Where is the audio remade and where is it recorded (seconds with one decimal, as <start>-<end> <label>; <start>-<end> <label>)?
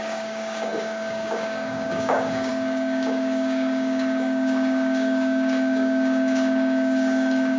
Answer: 0.0-7.6 remade